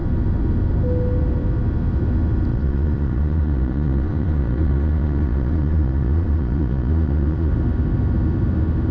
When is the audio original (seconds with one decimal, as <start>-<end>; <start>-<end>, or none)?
0.0-2.5; 7.5-8.9